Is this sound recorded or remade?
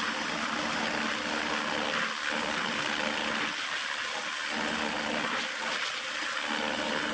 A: recorded